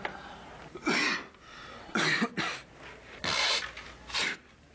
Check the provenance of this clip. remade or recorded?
recorded